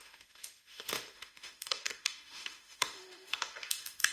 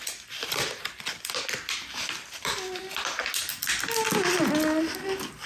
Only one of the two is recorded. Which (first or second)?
second